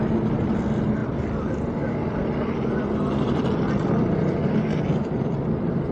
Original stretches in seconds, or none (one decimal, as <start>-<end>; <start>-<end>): 0.0-5.9